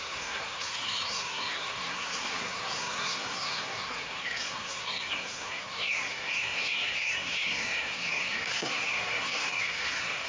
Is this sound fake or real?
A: fake